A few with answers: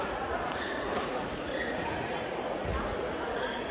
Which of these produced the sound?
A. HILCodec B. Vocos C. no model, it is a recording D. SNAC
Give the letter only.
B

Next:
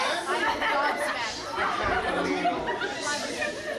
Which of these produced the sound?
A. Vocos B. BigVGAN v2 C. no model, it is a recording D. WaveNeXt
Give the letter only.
C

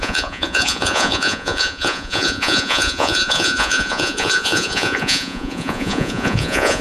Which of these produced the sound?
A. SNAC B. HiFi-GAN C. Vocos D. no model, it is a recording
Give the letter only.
C